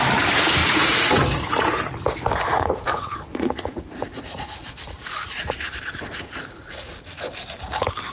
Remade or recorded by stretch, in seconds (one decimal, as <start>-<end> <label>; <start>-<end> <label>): 0.0-0.6 recorded; 0.6-1.9 remade; 1.9-2.5 recorded; 2.5-7.3 remade; 7.3-8.1 recorded